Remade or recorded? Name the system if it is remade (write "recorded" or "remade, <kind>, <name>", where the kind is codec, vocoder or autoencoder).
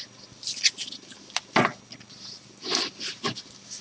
recorded